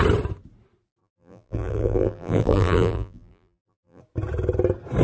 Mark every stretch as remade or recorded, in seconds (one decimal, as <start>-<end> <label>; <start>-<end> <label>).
0.0-1.0 recorded; 1.0-4.0 remade; 4.0-5.0 recorded